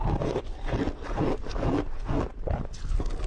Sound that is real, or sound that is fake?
real